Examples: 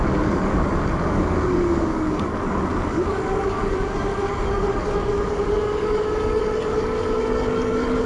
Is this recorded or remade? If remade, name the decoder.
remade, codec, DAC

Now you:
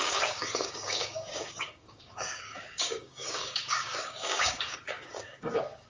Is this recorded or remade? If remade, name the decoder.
remade, codec, DAC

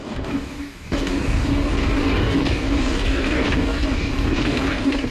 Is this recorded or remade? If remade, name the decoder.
remade, codec, DAC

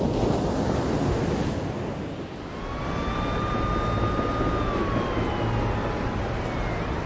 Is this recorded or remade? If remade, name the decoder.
recorded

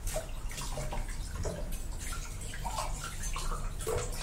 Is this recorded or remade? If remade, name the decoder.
recorded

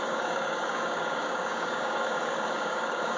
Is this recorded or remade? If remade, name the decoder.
remade, codec, DAC